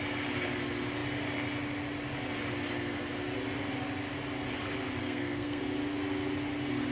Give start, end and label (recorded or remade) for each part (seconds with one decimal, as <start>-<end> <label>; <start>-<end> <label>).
0.0-5.0 recorded; 5.0-5.6 remade; 5.6-6.9 recorded